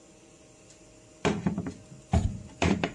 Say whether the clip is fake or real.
real